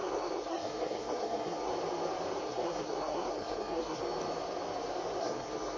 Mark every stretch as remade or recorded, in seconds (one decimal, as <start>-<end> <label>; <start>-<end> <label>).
0.0-1.7 remade; 1.7-2.4 recorded; 2.4-4.0 remade; 4.0-5.2 recorded; 5.2-5.8 remade